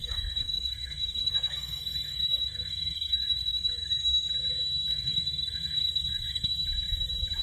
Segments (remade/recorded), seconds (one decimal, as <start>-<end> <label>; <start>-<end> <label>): 0.0-4.3 remade; 4.3-4.9 recorded; 4.9-6.5 remade; 6.5-7.4 recorded